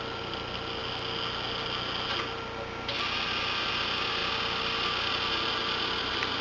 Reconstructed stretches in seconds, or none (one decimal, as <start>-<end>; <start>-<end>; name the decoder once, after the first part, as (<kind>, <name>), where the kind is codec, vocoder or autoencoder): none